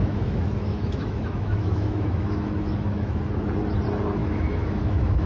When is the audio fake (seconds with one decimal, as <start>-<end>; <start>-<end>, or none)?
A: 0.0-3.2; 4.2-5.3